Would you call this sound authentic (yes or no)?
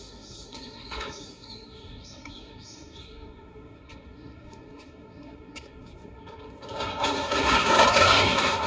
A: no